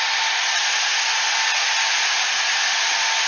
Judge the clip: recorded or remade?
recorded